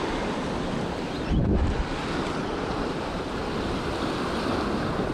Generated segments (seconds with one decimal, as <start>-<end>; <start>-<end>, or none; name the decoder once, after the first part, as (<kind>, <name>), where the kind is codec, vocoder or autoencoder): none